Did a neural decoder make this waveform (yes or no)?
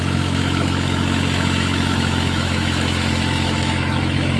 yes